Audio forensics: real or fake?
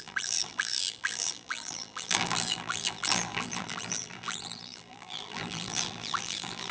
fake